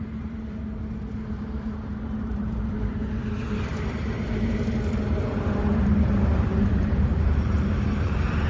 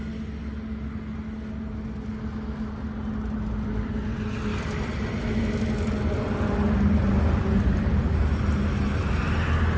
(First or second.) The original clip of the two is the second